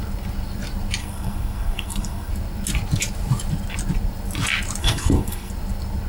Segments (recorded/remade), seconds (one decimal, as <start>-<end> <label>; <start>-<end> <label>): 0.0-1.0 recorded; 1.0-2.3 remade; 2.3-4.8 recorded; 4.8-5.5 remade; 5.5-6.1 recorded